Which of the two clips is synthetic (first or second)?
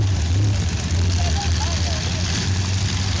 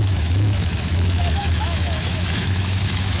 second